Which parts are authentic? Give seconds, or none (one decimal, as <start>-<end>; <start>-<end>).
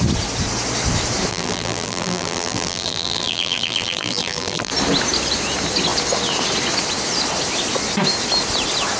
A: 0.0-1.3; 4.7-9.0